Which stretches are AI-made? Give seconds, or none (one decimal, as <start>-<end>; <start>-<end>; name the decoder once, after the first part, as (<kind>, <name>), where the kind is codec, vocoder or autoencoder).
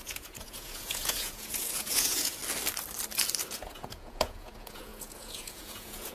0.0-2.4 (vocoder, Vocos); 3.5-6.1